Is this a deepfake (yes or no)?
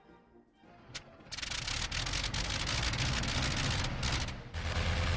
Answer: no